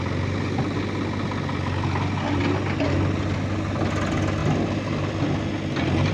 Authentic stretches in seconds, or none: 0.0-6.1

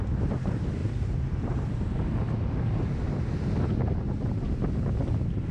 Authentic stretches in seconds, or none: 0.0-0.8; 1.7-5.5